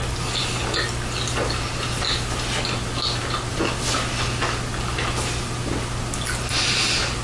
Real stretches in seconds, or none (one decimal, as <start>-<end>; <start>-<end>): 0.0-7.2